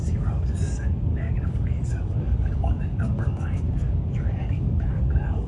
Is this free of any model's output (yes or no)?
no